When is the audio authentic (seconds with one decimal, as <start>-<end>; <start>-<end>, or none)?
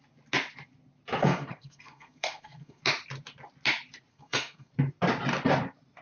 0.0-1.2; 2.8-4.1; 4.7-6.0